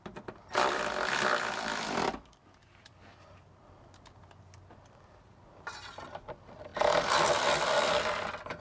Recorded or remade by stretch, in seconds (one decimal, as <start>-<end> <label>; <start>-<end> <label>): 0.0-8.6 recorded